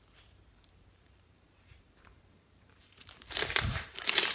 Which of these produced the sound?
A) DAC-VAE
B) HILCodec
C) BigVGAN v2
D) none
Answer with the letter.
C